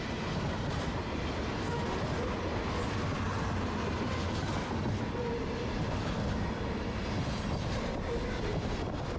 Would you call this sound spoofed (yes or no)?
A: no